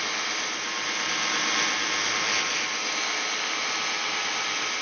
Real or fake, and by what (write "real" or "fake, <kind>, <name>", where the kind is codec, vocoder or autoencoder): real